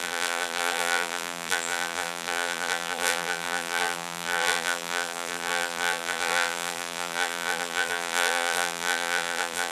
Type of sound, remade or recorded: remade